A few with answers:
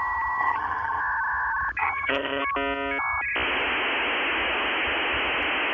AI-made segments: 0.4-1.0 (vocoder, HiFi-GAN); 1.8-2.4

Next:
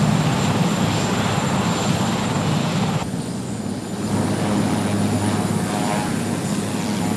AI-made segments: 3.0-3.6 (vocoder, Vocos)

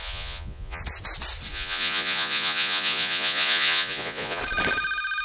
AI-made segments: 0.0-0.8 (vocoder, Vocos); 1.5-4.4

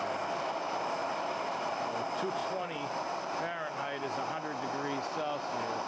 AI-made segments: 1.0-1.9 (vocoder, BigVGAN v2); 2.4-3.2